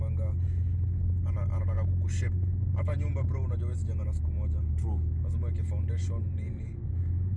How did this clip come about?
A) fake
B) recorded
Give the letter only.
B